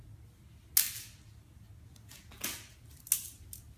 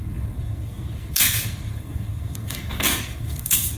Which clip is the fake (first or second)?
second